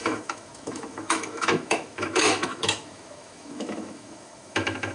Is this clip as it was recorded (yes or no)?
no